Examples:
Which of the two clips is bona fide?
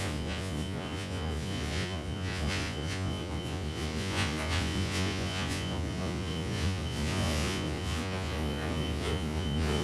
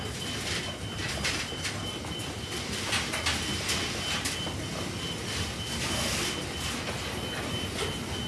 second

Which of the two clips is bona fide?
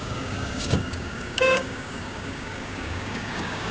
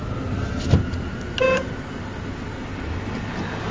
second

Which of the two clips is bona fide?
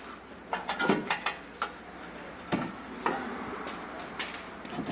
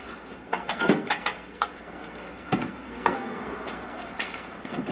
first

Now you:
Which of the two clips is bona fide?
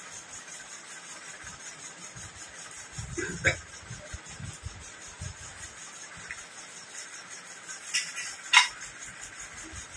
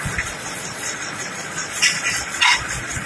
first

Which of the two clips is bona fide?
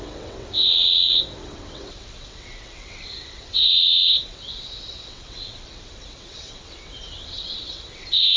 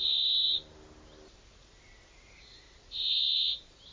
second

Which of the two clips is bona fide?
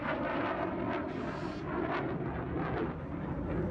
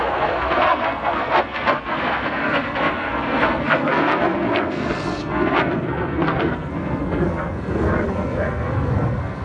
first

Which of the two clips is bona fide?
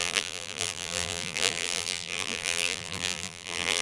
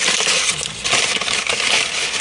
second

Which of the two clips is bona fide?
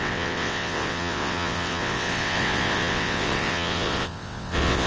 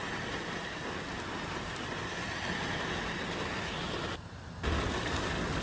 second